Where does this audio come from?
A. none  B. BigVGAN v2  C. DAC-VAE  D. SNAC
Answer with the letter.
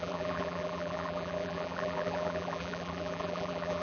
B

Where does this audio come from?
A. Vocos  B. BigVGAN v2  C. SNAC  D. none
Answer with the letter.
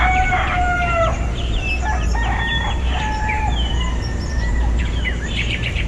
B